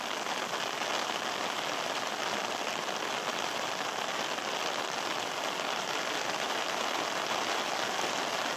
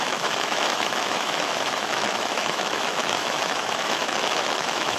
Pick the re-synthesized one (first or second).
second